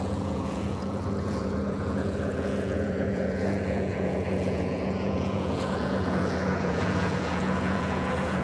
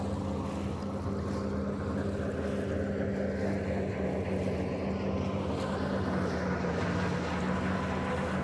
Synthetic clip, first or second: first